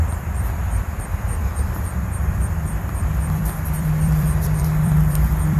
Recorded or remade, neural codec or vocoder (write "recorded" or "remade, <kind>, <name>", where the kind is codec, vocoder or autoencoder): remade, vocoder, BigVGAN v2